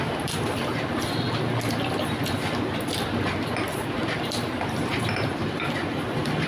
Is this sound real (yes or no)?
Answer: yes